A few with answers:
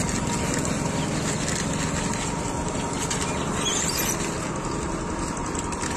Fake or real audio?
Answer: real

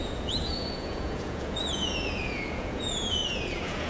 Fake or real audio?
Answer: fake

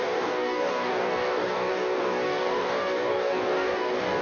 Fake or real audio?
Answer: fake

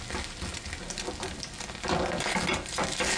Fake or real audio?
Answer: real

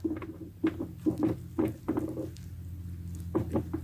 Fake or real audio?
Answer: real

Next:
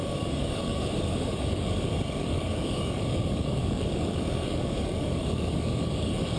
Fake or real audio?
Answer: fake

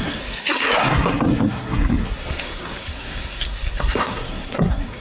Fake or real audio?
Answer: fake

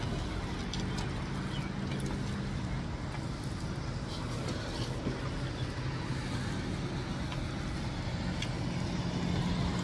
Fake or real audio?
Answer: real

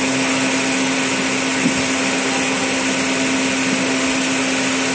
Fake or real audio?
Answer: real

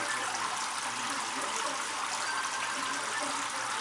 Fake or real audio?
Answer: real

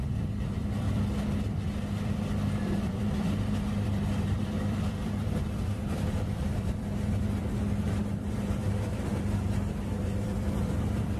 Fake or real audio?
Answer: fake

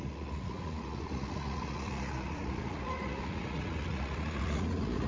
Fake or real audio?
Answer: fake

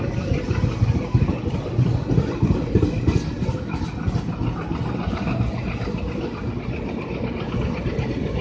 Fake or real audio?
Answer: real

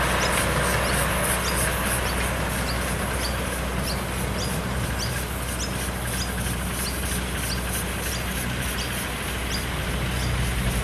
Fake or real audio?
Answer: real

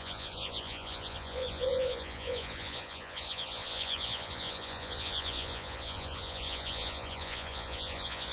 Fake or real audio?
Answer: fake